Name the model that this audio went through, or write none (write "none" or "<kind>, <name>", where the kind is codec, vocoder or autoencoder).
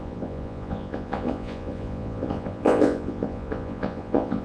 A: vocoder, Vocos